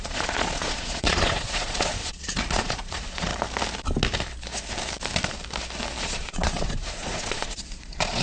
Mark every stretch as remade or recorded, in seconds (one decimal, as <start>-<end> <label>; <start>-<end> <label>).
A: 0.0-3.3 remade; 3.3-6.0 recorded; 6.0-8.2 remade